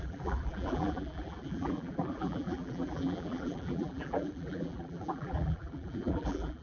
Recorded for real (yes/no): no